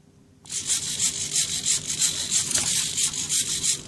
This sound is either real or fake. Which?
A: real